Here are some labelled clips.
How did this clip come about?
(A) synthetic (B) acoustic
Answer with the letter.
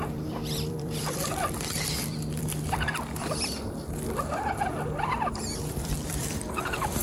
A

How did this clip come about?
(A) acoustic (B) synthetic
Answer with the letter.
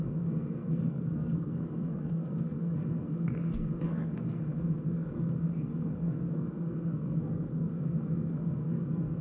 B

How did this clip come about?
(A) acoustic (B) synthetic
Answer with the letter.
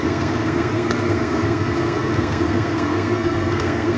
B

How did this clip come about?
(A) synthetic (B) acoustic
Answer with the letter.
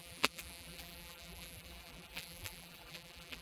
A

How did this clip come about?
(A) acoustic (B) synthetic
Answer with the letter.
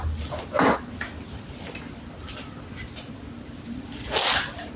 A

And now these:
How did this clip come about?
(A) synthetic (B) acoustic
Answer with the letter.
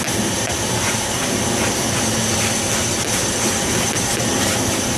B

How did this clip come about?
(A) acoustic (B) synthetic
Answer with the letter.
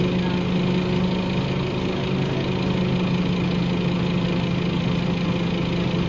A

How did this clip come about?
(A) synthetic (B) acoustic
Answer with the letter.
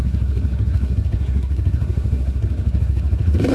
A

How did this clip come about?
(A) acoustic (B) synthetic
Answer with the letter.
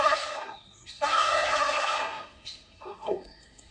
B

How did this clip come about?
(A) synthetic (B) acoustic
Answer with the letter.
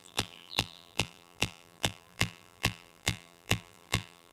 A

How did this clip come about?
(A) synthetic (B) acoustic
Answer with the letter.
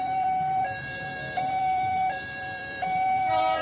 A